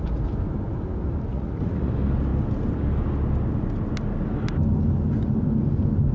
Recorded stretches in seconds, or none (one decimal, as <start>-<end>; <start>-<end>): 0.0-1.3; 1.9-6.1